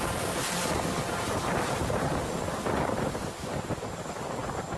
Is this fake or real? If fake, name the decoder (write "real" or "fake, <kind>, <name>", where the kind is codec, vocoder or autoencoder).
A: real